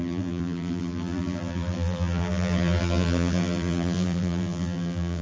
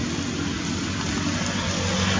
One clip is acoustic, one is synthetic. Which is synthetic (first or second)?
first